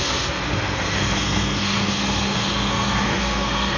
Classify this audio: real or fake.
fake